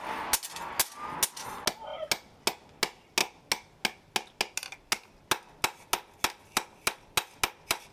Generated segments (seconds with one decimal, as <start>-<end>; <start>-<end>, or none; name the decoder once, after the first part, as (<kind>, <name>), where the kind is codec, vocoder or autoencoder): none